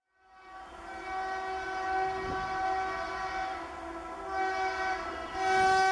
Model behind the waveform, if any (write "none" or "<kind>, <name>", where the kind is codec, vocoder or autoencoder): none